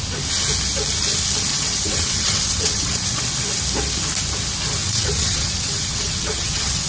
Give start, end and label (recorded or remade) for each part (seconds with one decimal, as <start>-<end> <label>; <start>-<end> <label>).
0.0-1.5 recorded; 1.5-3.2 remade; 3.2-4.8 recorded; 4.8-6.9 remade